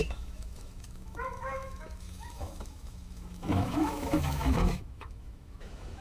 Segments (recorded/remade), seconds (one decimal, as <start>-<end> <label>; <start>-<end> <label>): 0.0-6.0 remade